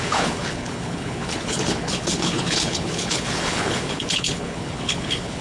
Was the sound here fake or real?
fake